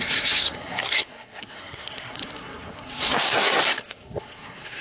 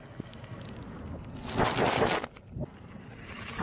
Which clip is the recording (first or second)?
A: second